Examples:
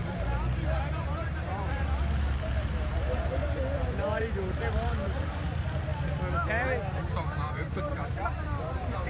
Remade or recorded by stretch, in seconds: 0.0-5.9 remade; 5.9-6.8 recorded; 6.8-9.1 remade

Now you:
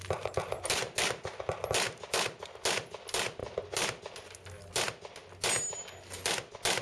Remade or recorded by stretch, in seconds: 0.0-6.8 recorded

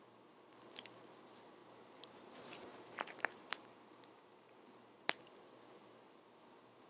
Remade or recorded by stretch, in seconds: 0.0-1.6 recorded; 1.6-2.3 remade; 2.3-2.7 recorded; 2.7-4.8 remade; 4.8-6.9 recorded

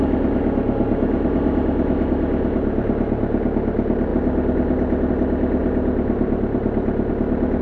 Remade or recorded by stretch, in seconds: 0.0-4.1 recorded; 4.1-5.1 remade; 5.1-5.6 recorded; 5.6-7.1 remade; 7.1-7.6 recorded

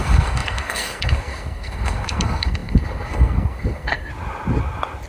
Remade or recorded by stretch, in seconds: 0.0-4.1 remade; 4.1-5.1 recorded

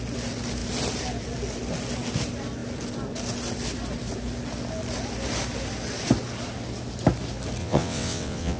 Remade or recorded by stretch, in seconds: 0.0-7.6 recorded; 7.6-8.6 remade

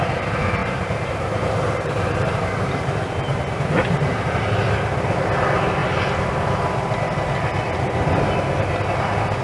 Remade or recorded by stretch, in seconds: 0.0-0.6 recorded; 0.6-4.4 remade; 4.4-9.4 recorded